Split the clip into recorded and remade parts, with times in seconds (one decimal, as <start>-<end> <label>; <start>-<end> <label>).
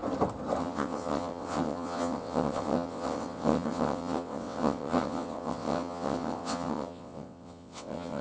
0.0-0.6 recorded; 0.6-8.2 remade